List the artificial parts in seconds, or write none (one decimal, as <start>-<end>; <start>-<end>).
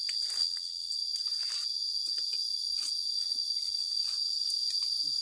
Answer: 0.4-0.9